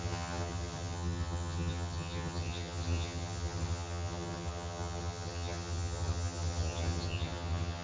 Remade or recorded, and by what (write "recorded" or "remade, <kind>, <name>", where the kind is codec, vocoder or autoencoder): remade, vocoder, HiFi-GAN